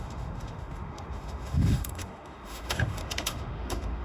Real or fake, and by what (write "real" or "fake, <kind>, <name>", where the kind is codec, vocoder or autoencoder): fake, autoencoder, DAC-VAE